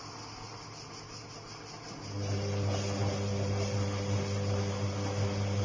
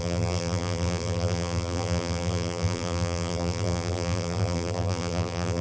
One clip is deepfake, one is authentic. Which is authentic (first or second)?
first